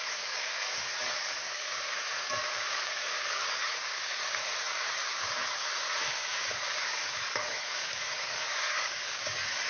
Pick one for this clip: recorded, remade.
remade